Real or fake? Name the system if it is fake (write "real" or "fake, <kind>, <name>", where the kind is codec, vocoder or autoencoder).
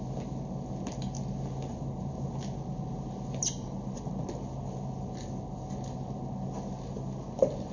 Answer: real